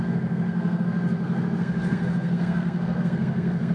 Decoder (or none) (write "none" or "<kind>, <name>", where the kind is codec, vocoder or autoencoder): codec, SNAC